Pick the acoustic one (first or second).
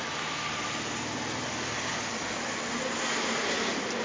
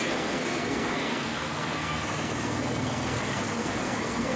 first